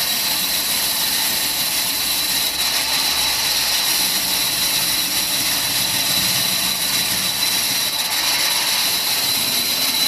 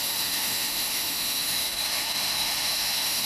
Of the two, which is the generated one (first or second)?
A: second